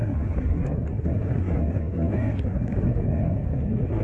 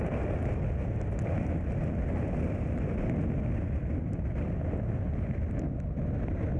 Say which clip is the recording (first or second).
second